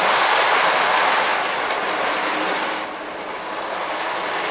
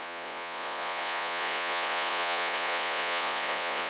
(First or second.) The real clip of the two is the first